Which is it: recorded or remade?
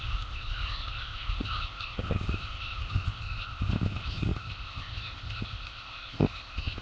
remade